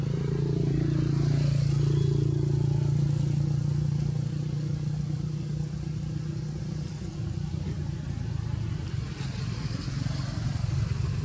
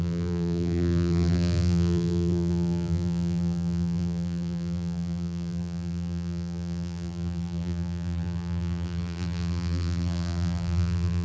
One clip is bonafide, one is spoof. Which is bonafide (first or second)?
first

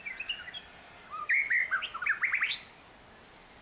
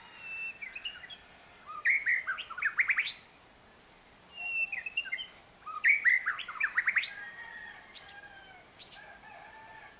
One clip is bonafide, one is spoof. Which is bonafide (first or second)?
first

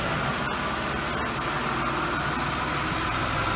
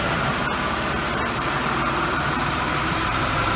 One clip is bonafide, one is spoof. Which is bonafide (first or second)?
first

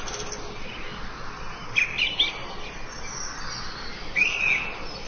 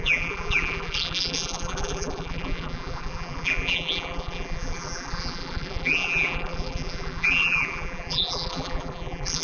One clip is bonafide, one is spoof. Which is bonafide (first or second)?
first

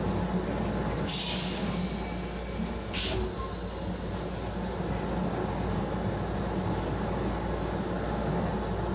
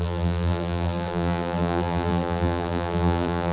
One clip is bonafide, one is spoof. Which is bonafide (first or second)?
first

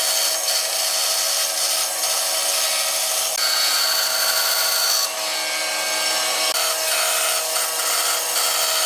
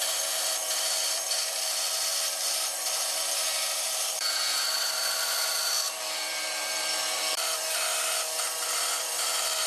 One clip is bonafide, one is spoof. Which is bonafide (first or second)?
first